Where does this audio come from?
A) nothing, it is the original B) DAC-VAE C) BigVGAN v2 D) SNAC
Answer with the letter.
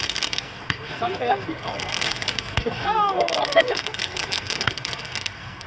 D